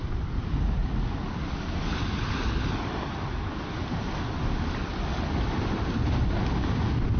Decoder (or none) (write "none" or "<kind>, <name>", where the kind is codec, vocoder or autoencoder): none